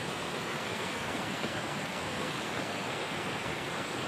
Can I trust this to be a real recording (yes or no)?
no